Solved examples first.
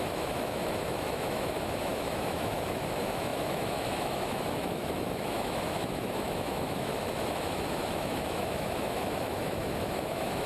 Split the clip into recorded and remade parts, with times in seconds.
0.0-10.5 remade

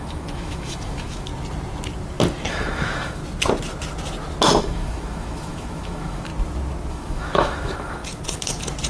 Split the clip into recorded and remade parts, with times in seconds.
0.0-1.3 remade; 1.3-2.5 recorded; 2.5-3.2 remade; 3.2-4.6 recorded; 4.6-6.3 remade; 6.3-6.9 recorded; 6.9-8.0 remade; 8.0-8.9 recorded

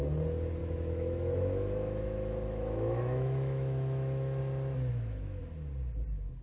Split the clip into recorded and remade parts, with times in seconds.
0.0-0.6 recorded; 0.6-4.4 remade; 4.4-4.9 recorded; 4.9-5.4 remade; 5.4-6.4 recorded

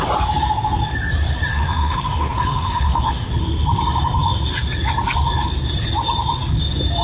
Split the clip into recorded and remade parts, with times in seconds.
0.0-1.5 recorded; 1.5-3.3 remade; 3.3-7.0 recorded